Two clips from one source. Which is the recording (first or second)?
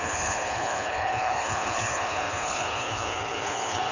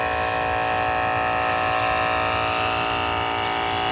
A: second